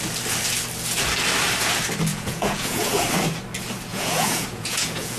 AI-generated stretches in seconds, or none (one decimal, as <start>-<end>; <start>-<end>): 2.1-3.0; 3.9-5.2